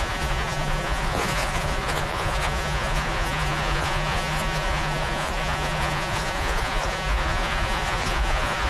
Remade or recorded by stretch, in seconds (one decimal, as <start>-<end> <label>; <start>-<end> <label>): 0.0-8.7 remade